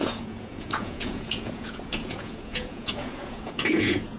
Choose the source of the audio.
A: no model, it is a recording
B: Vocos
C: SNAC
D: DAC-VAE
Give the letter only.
B